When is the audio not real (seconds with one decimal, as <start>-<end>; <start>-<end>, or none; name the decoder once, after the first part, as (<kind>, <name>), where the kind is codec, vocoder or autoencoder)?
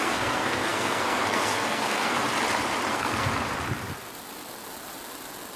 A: 0.0-2.2 (codec, SNAC); 2.9-3.3